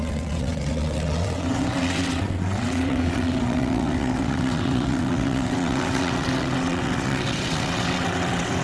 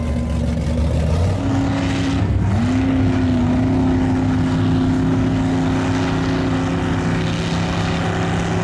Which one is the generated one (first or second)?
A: first